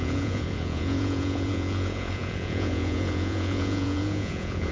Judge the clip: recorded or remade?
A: remade